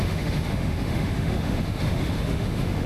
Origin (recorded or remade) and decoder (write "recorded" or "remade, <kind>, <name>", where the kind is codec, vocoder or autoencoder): remade, autoencoder, DAC-VAE